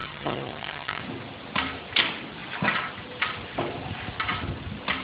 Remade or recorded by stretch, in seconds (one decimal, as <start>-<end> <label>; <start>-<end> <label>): 0.0-1.0 remade; 1.0-5.0 recorded